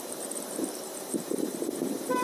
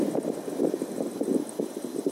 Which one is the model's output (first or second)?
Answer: first